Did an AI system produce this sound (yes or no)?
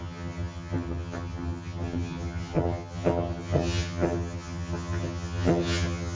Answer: yes